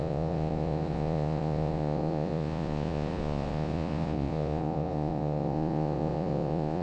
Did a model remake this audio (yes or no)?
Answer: yes